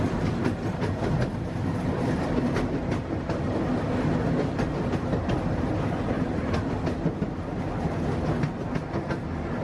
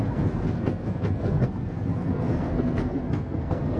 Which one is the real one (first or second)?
first